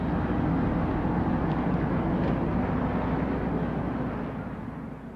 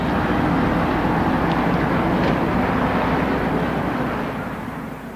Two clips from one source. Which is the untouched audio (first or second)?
first